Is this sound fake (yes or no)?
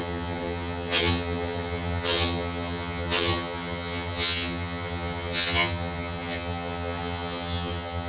yes